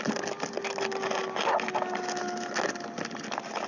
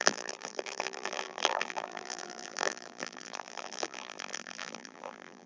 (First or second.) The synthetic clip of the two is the second